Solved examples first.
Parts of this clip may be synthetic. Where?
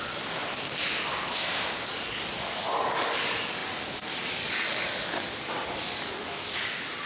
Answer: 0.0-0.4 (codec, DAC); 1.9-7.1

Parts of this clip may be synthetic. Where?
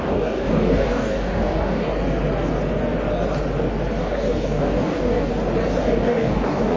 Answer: 0.0-1.9 (codec, DAC); 4.0-5.3; 5.8-6.8